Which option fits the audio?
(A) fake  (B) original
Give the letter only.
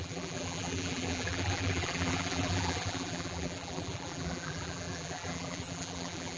A